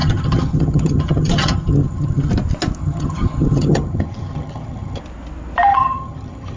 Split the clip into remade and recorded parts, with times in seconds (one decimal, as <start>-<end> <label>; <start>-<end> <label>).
0.0-2.3 remade; 2.3-2.8 recorded; 2.8-5.0 remade; 5.0-5.7 recorded; 5.7-6.6 remade